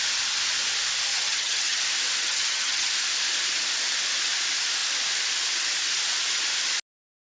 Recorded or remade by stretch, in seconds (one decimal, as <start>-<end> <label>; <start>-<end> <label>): 0.0-1.1 recorded; 1.1-1.8 remade; 1.8-2.2 recorded; 2.2-2.9 remade; 2.9-7.2 recorded